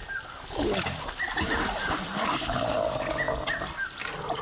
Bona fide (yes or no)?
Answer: yes